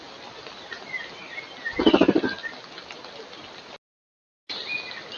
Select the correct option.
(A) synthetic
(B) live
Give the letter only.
B